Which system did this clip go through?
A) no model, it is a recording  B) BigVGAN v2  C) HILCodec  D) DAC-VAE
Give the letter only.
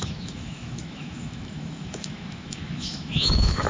D